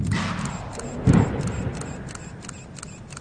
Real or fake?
real